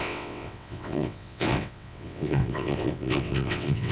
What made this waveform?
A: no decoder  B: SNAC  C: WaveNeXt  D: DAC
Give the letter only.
C